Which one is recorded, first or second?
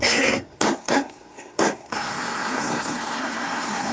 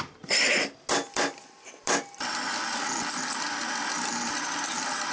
second